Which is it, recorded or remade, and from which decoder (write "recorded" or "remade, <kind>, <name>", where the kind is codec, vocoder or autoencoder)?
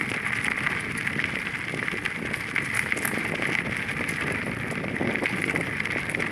recorded